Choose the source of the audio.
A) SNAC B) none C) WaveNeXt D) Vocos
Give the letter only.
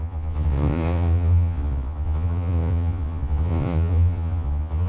D